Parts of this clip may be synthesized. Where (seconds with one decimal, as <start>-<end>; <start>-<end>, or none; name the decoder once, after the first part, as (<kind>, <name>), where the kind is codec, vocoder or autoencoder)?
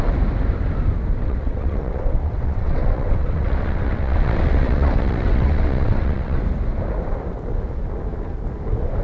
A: 1.2-6.4 (vocoder, WaveNeXt)